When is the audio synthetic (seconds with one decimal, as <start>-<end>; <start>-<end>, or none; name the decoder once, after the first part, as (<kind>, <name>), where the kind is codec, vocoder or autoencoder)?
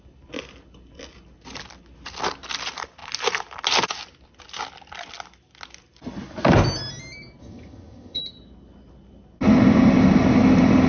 7.4-8.2 (vocoder, HiFi-GAN)